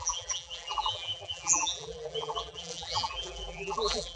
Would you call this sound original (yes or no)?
no